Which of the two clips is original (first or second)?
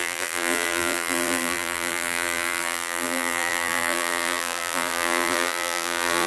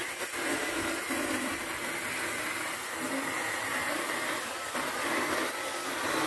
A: second